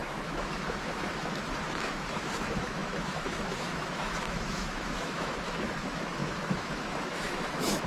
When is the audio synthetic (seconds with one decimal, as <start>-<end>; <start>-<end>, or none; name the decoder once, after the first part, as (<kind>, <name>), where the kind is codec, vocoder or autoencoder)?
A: 0.0-7.9 (autoencoder, DAC-VAE)